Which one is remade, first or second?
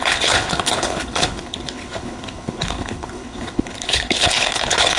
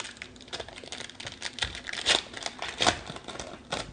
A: first